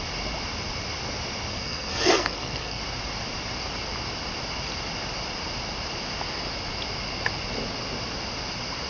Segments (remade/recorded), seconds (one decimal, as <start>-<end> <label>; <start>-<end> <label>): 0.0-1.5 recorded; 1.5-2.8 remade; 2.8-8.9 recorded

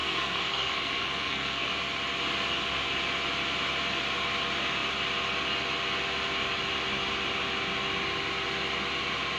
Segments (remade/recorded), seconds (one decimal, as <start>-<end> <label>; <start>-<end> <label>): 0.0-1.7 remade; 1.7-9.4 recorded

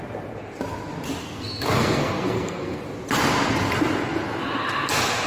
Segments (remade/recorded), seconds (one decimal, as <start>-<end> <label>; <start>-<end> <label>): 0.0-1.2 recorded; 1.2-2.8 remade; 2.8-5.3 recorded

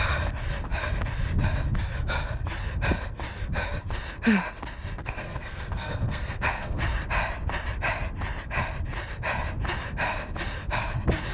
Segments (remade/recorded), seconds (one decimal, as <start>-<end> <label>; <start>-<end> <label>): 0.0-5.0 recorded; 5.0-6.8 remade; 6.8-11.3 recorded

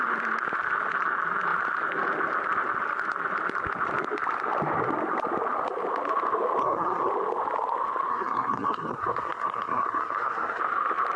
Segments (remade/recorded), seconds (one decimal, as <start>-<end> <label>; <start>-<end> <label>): 0.0-6.6 recorded; 6.6-7.1 remade; 7.1-8.1 recorded; 8.1-10.6 remade; 10.6-11.2 recorded

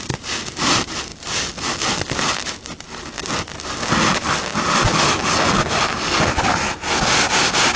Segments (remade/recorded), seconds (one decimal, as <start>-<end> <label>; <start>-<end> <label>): 0.0-7.8 recorded

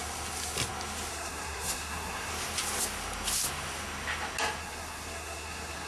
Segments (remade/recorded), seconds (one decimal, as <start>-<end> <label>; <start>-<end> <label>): 0.0-1.1 recorded; 1.1-2.3 remade; 2.3-4.6 recorded; 4.6-5.9 remade